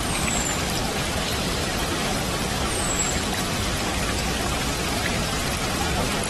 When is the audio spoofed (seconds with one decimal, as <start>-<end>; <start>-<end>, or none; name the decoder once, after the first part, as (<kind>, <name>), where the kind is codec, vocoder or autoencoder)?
0.0-6.3 (vocoder, BigVGAN v2)